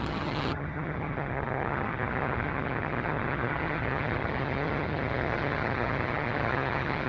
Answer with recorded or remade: remade